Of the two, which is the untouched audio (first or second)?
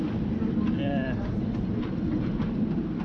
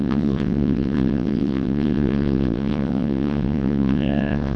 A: first